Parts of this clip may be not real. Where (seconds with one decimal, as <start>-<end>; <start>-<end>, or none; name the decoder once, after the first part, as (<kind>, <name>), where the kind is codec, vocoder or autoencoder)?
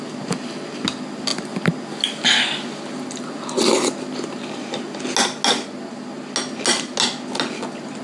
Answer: none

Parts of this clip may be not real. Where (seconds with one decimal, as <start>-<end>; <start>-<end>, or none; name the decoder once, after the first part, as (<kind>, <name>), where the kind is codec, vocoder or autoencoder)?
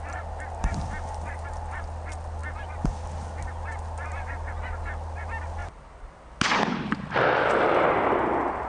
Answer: 5.6-6.3 (vocoder, BigVGAN v2)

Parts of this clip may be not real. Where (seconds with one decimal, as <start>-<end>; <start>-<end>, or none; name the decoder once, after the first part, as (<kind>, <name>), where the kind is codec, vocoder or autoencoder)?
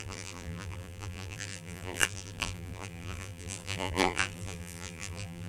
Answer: 0.0-5.5 (vocoder, BigVGAN v2)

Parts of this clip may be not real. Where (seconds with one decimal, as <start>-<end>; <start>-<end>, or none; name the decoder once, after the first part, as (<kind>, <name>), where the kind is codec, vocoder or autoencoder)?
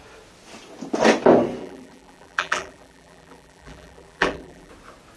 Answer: 1.6-4.7 (vocoder, BigVGAN v2)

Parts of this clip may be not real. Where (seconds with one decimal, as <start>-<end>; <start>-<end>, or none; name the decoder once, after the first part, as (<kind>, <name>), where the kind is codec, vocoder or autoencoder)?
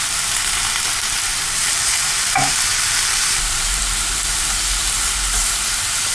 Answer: 1.3-3.8 (vocoder, BigVGAN v2)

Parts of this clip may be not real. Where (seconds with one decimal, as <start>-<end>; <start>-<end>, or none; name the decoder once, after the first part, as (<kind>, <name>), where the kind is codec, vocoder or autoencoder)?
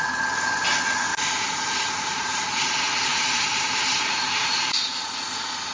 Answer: 1.1-2.5 (vocoder, BigVGAN v2); 3.1-4.9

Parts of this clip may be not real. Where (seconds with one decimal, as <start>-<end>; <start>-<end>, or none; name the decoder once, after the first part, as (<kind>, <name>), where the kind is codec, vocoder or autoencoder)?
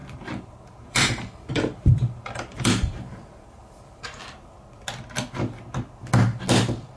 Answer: 0.0-4.2 (vocoder, BigVGAN v2)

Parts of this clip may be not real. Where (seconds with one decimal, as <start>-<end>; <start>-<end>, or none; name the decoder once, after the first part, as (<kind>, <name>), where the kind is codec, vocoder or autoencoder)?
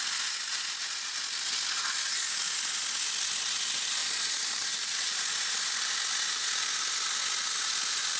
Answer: 4.0-5.2 (vocoder, BigVGAN v2)